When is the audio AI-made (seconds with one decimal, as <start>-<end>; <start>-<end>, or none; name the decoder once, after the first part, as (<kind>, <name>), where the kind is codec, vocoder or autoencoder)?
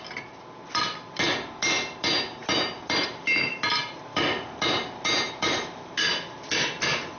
none